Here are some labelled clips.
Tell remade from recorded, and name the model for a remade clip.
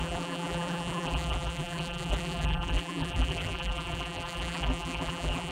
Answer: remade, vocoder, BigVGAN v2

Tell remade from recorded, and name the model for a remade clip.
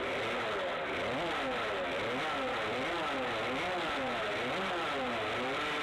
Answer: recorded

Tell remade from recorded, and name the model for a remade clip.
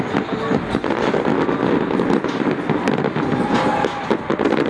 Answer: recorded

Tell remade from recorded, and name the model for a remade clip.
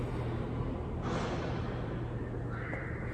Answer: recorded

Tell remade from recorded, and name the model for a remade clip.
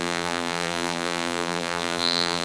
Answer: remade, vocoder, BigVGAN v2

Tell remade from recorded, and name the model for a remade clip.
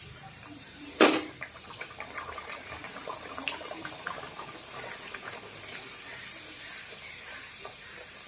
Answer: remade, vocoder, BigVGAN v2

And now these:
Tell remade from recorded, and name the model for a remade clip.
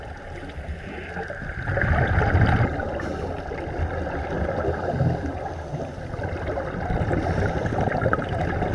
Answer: recorded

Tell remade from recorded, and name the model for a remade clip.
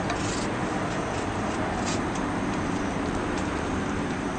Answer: remade, vocoder, BigVGAN v2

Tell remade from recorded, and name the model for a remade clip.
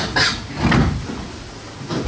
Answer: recorded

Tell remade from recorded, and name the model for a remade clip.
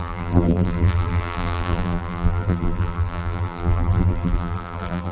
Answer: remade, vocoder, BigVGAN v2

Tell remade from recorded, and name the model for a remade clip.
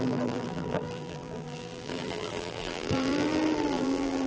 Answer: remade, vocoder, BigVGAN v2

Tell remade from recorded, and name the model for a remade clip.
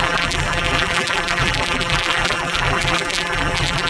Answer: remade, vocoder, BigVGAN v2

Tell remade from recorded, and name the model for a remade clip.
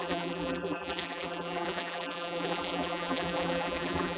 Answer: remade, vocoder, BigVGAN v2